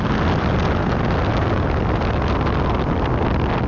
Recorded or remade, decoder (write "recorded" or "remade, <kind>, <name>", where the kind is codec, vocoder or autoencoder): recorded